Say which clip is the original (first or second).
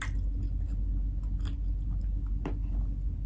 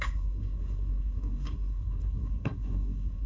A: first